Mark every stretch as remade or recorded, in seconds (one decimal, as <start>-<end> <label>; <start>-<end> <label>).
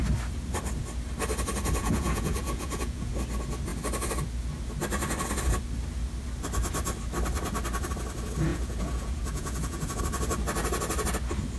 0.0-1.8 recorded; 1.8-3.1 remade; 3.1-8.5 recorded; 8.5-10.0 remade; 10.0-11.6 recorded